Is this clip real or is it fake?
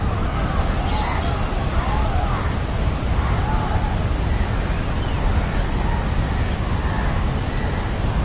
real